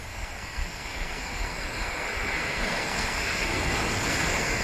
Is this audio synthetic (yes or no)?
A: yes